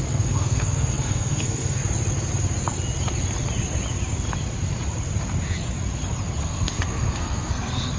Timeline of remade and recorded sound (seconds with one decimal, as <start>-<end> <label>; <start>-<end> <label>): 0.0-1.8 remade; 1.8-6.4 recorded; 6.4-8.0 remade